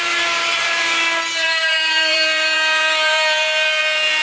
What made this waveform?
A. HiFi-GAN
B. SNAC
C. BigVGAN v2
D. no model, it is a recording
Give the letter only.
C